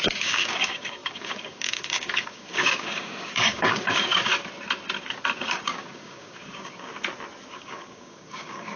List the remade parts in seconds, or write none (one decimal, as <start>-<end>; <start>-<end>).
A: 0.0-4.3; 5.4-6.9; 7.5-8.8